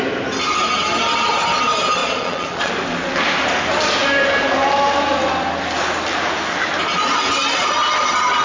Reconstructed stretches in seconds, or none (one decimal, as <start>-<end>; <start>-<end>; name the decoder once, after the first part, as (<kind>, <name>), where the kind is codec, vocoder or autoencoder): 2.0-2.7 (vocoder, Vocos)